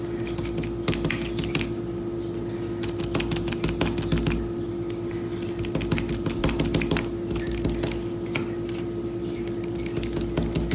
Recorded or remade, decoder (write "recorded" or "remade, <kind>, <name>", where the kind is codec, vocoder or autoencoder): recorded